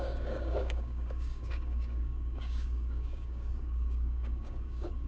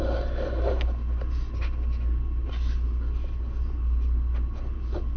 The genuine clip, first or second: second